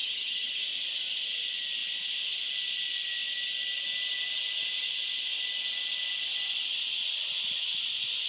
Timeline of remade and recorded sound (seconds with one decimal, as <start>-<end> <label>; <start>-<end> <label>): 0.0-0.6 remade; 0.6-8.3 recorded